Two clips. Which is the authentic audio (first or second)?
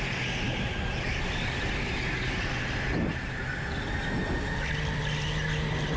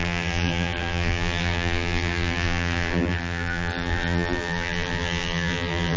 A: first